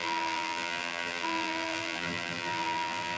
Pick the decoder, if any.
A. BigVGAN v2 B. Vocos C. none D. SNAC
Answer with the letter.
A